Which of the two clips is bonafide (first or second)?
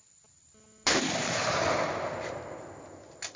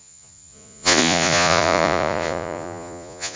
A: first